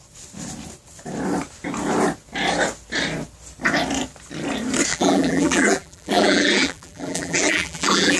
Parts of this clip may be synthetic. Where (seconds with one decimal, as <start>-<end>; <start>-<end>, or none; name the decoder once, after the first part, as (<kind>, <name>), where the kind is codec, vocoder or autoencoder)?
4.9-8.2 (vocoder, BigVGAN v2)